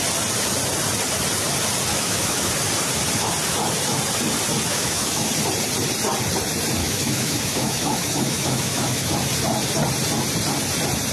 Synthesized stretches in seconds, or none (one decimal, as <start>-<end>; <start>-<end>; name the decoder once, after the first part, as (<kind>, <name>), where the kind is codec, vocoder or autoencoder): 1.9-2.5 (autoencoder, DAC-VAE); 4.7-5.3; 6.8-9.1